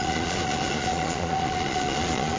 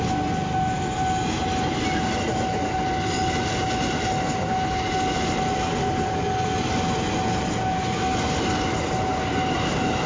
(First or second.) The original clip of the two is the second